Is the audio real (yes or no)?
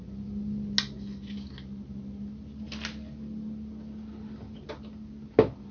yes